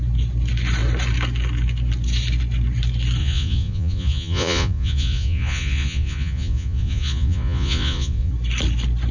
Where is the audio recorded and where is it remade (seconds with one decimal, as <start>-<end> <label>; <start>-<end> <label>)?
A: 0.0-3.2 recorded; 3.2-8.3 remade; 8.3-9.1 recorded